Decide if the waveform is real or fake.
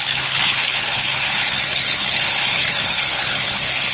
fake